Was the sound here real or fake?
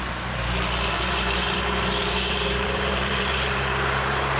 fake